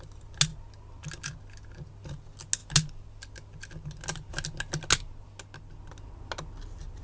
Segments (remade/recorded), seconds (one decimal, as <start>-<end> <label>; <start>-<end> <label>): 0.0-7.0 recorded